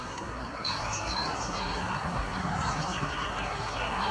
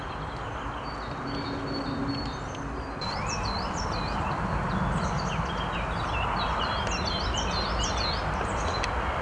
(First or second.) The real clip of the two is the second